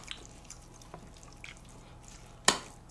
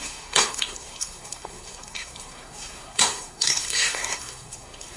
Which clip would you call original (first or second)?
first